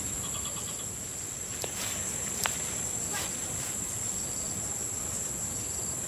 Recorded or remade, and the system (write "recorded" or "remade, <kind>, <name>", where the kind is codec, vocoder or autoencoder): remade, vocoder, BigVGAN v2